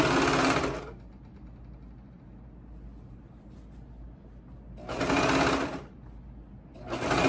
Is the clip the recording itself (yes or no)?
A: yes